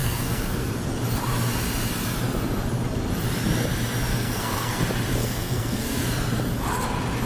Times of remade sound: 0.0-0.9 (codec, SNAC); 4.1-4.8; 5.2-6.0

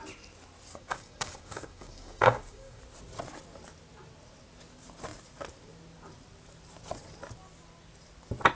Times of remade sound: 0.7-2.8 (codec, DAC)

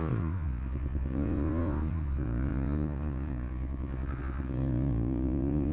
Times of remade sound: 0.0-5.7 (vocoder, Vocos)

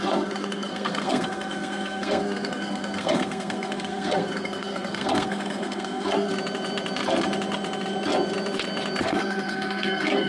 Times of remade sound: 0.0-6.3 (codec, SNAC); 9.0-10.3

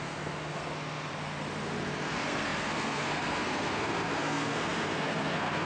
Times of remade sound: 0.0-1.1 (codec, SNAC); 2.1-5.7

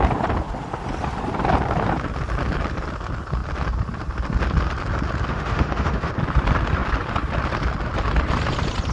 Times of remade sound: 5.3-6.1 (autoencoder, DAC-VAE)